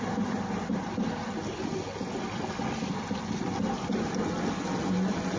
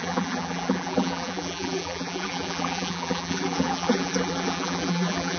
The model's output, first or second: second